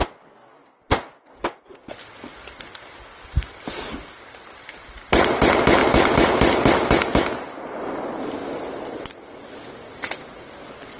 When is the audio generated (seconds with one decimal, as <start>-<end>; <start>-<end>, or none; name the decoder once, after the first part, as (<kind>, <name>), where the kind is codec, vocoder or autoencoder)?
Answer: none